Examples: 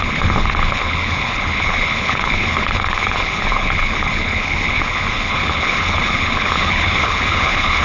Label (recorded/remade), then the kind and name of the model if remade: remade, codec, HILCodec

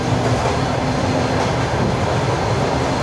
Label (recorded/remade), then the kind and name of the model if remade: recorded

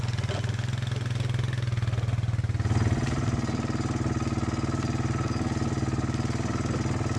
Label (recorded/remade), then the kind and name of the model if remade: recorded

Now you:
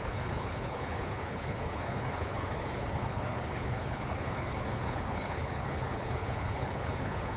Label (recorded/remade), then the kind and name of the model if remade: remade, codec, HILCodec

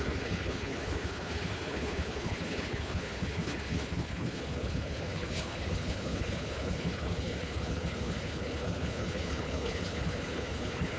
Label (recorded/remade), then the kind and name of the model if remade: remade, codec, HILCodec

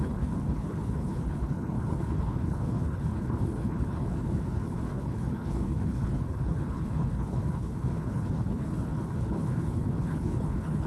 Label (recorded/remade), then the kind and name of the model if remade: remade, codec, HILCodec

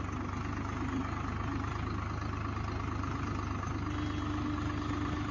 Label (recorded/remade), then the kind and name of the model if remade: recorded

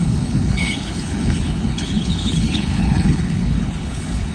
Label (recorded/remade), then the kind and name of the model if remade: remade, codec, HILCodec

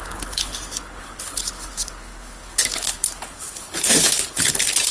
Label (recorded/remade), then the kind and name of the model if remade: remade, codec, HILCodec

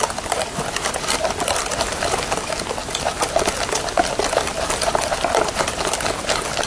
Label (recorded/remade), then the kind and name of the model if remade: recorded